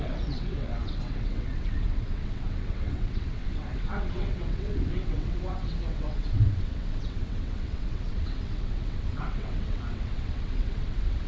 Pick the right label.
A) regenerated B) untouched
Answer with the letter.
A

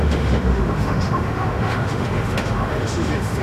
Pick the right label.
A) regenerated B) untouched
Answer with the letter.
A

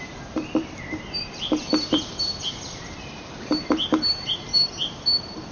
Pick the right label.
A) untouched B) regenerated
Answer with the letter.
B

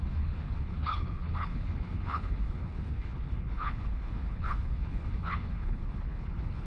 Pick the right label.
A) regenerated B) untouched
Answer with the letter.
A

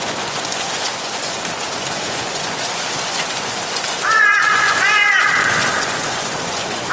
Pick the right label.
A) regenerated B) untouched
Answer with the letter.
A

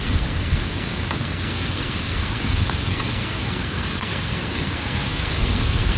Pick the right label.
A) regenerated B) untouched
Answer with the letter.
A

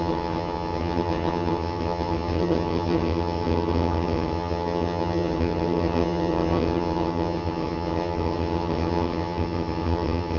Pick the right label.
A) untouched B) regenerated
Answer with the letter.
B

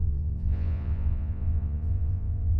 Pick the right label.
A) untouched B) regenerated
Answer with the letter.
B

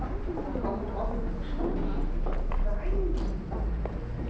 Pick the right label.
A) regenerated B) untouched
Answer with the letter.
B